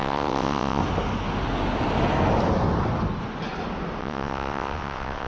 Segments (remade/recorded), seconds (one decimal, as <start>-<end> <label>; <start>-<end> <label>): 0.0-0.8 remade; 0.8-4.0 recorded; 4.0-5.3 remade